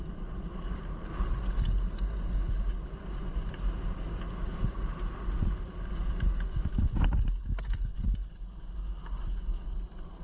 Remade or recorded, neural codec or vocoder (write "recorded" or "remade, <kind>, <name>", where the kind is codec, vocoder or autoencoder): recorded